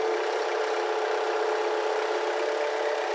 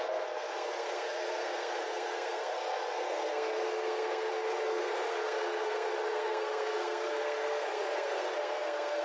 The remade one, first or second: second